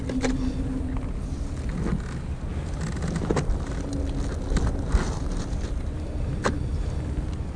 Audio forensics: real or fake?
real